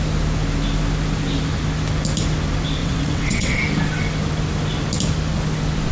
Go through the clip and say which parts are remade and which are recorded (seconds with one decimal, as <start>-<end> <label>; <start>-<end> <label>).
0.0-2.8 recorded; 2.8-3.6 remade; 3.6-5.9 recorded